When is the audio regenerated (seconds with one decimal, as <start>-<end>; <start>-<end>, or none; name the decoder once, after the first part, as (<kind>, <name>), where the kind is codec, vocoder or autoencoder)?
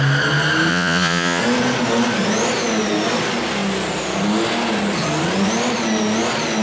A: 0.7-1.4 (vocoder, Vocos)